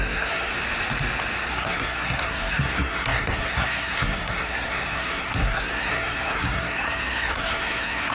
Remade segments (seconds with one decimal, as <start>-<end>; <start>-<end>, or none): 0.0-0.5; 1.5-8.1